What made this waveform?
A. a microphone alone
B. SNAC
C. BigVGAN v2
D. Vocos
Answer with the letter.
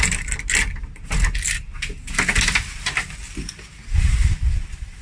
A